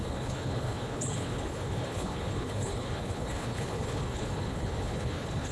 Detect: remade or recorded remade